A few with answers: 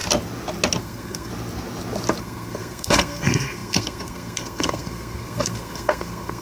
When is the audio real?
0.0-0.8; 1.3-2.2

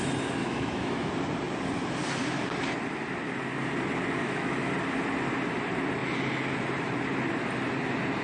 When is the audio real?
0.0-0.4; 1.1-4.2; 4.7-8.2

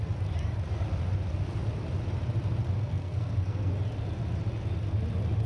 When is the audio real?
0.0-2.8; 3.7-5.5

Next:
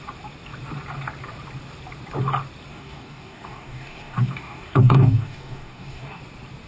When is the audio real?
0.0-2.7; 6.2-6.7

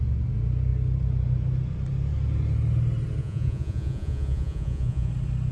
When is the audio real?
0.0-3.2; 5.1-5.5

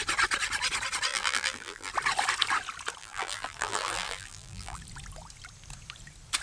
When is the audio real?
0.0-1.1; 1.9-3.0; 4.8-6.4

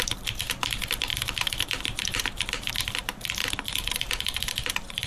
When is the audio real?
0.0-5.1